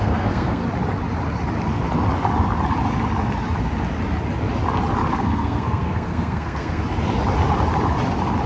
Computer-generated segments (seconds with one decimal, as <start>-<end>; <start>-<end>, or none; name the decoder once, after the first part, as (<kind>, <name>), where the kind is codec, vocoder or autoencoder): 0.0-0.6 (codec, SNAC); 5.1-6.8